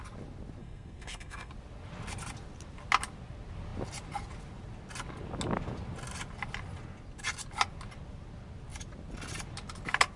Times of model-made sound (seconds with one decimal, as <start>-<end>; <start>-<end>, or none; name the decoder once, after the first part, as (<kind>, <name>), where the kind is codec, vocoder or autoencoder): 0.6-1.5 (codec, SNAC)